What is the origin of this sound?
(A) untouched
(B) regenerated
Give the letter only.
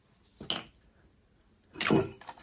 A